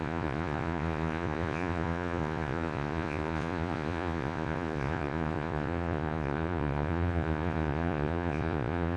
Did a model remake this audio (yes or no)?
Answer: yes